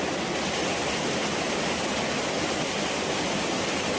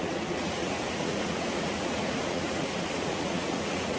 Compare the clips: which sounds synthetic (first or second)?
second